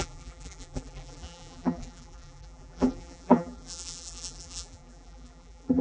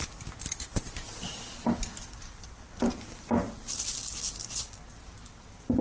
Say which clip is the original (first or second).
second